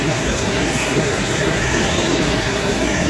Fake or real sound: fake